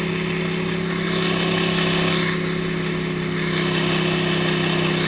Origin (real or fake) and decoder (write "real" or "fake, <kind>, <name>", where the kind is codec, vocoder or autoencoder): real